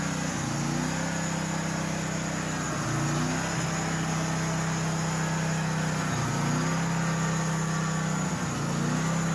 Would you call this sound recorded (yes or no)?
yes